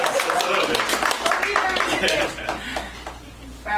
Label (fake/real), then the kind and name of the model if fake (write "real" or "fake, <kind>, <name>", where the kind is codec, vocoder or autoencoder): real